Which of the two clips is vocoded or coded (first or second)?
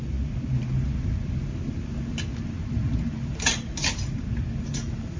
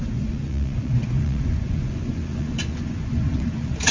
second